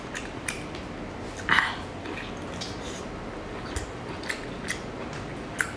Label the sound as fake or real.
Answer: real